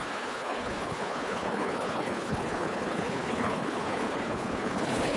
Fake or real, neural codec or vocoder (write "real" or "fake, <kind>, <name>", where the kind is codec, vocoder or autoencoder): fake, codec, HILCodec